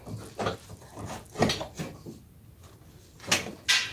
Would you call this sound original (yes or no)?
yes